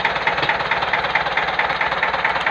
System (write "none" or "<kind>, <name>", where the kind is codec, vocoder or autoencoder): none